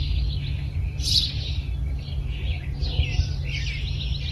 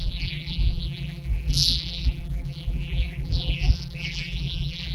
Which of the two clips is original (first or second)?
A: first